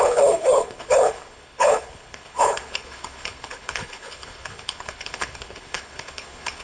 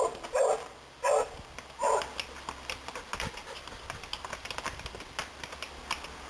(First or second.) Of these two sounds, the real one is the second